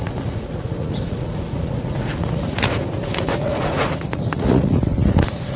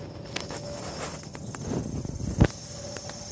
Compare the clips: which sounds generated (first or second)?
first